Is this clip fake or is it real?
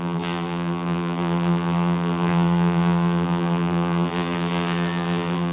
fake